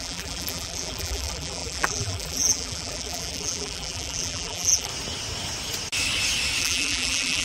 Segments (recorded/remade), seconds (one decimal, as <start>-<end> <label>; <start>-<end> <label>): 0.0-4.9 remade; 4.9-6.6 recorded; 6.6-7.4 remade